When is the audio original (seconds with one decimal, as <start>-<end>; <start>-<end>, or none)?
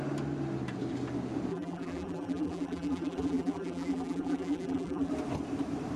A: 0.0-1.5; 5.1-6.0